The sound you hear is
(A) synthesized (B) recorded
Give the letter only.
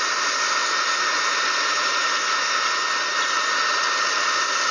B